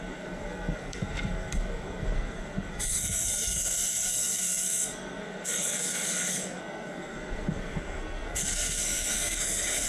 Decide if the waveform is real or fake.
fake